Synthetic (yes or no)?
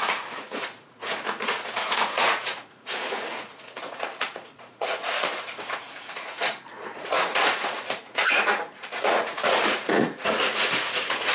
yes